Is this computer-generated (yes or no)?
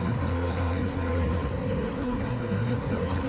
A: yes